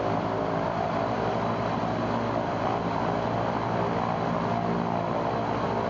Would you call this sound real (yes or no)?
no